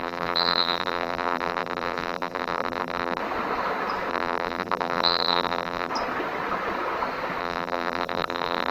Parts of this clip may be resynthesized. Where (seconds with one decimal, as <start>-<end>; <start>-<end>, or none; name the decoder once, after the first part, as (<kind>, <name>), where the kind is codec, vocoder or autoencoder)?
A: 0.0-3.2 (vocoder, BigVGAN v2); 4.1-5.9; 7.4-8.7